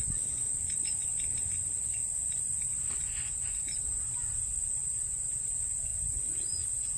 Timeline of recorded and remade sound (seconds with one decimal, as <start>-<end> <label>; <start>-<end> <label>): 0.0-7.0 recorded